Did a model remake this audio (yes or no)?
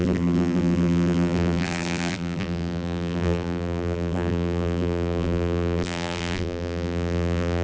yes